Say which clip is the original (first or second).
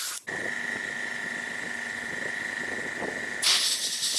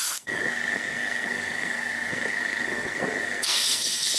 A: first